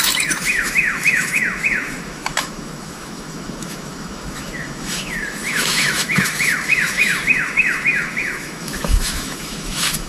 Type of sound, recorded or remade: remade